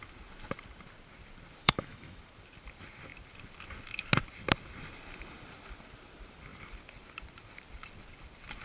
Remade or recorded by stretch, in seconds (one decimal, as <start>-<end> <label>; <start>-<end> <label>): 0.0-1.6 recorded; 1.6-2.2 remade; 2.2-8.6 recorded